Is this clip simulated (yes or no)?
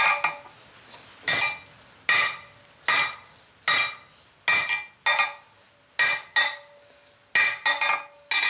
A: no